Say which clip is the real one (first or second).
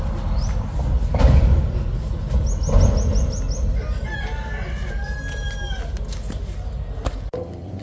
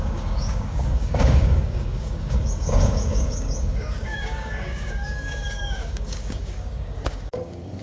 first